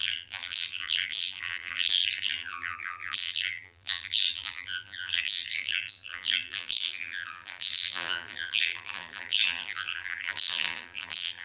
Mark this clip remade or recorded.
remade